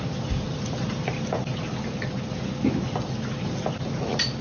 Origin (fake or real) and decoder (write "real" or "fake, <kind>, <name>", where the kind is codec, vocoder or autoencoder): real